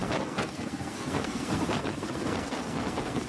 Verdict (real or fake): fake